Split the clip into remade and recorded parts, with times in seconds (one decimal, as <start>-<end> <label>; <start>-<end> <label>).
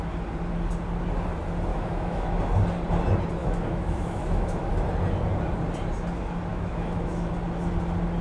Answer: 0.0-1.7 recorded; 1.7-2.4 remade; 2.4-3.4 recorded; 3.4-4.7 remade; 4.7-6.5 recorded; 6.5-7.3 remade; 7.3-8.2 recorded